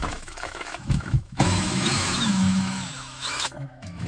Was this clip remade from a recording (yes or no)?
yes